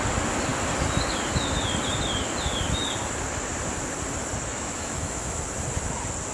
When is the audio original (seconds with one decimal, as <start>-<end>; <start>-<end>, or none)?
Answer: 0.0-4.5; 5.4-6.3